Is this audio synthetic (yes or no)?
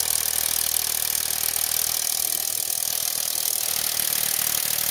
no